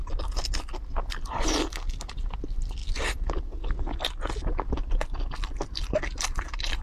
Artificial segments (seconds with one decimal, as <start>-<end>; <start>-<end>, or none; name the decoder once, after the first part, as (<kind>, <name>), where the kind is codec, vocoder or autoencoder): none